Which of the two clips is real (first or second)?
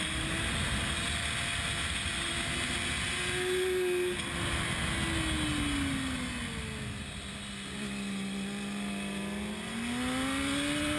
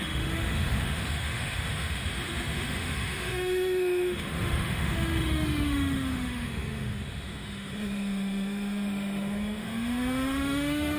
first